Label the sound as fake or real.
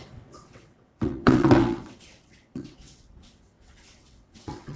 fake